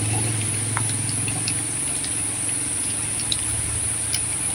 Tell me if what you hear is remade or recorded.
recorded